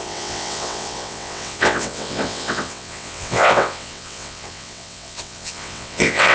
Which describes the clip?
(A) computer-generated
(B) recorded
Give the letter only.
A